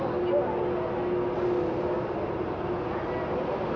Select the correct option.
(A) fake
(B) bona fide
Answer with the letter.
B